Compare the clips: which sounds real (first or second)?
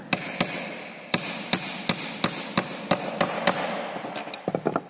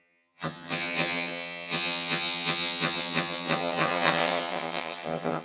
first